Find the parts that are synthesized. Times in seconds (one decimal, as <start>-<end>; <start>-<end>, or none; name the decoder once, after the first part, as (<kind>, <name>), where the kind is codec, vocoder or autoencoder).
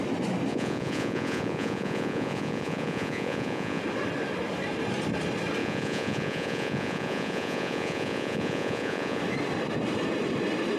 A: 0.5-3.8 (vocoder, Vocos); 5.6-9.2